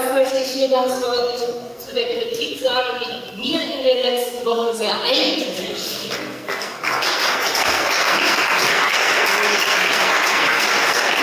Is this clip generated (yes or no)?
yes